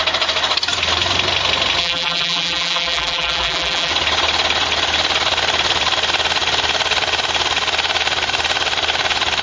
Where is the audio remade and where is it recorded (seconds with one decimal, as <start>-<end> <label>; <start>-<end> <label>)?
0.0-1.8 recorded; 1.8-3.9 remade; 3.9-9.4 recorded